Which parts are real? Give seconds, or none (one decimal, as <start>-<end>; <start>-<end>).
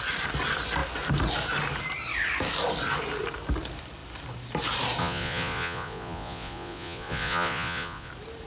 0.0-5.0; 8.1-8.5